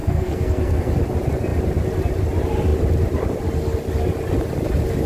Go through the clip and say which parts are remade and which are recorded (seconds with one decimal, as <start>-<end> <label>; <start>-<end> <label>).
0.0-0.9 remade; 0.9-5.1 recorded